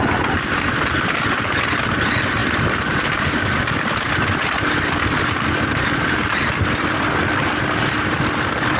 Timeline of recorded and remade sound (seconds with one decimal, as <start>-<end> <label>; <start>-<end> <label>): 0.0-8.8 recorded